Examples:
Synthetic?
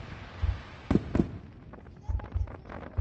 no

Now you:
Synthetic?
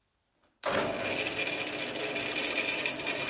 no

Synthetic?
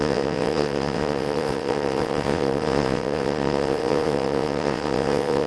yes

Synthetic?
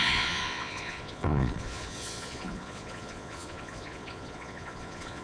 yes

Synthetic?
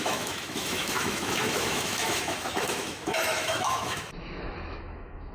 yes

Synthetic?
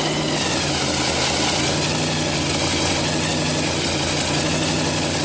no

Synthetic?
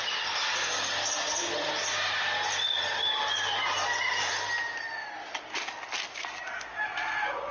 no